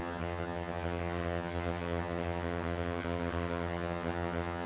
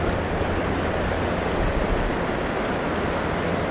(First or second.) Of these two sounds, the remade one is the first